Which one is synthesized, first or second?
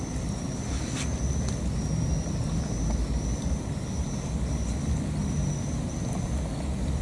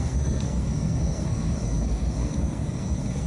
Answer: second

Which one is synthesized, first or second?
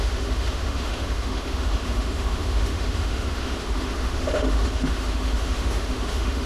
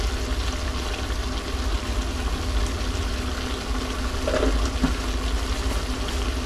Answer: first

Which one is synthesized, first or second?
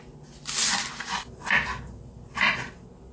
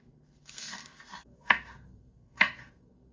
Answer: second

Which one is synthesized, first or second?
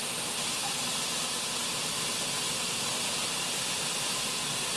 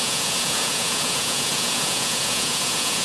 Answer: second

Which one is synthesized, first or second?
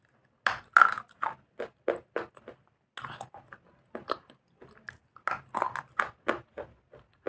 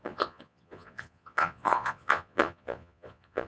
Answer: second